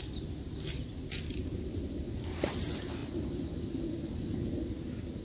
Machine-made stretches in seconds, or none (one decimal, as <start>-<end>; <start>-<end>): 1.4-2.5